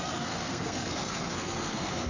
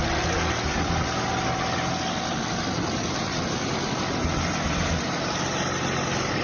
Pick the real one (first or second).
second